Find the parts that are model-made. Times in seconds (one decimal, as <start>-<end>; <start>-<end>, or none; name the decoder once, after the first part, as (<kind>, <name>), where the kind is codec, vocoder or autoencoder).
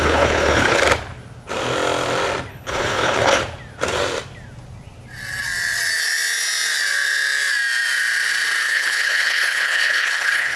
0.0-0.8 (codec, HILCodec); 2.5-3.4; 8.6-10.6